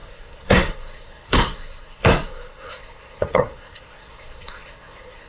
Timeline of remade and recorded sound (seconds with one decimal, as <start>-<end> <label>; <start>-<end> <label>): 0.0-5.3 remade